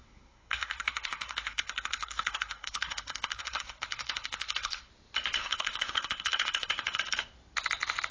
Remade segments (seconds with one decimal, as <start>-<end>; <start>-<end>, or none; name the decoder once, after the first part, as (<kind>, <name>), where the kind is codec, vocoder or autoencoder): 0.0-4.9 (codec, SNAC); 5.4-7.0